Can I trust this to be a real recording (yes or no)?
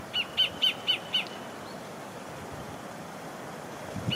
yes